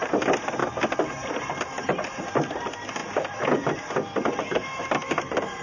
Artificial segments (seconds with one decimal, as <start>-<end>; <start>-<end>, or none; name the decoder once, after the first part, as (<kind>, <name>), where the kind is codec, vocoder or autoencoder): none